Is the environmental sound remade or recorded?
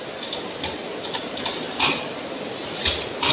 recorded